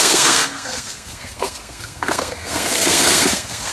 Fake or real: fake